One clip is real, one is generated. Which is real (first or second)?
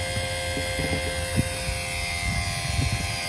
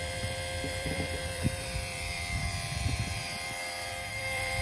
first